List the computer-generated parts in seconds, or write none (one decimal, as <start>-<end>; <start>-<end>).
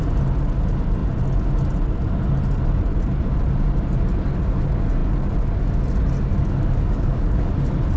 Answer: 6.3-7.5